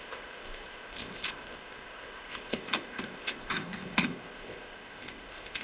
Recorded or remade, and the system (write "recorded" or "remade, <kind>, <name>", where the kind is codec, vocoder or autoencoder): remade, codec, ZipCodec